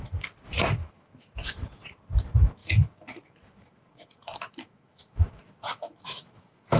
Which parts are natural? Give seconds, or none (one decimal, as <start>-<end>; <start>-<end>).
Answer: 0.0-0.8; 1.8-2.6